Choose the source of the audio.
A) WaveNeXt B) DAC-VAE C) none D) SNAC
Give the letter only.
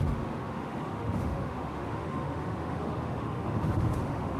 B